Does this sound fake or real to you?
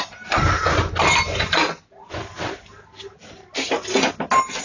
real